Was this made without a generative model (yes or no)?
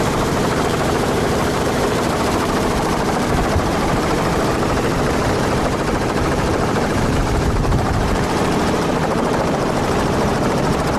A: no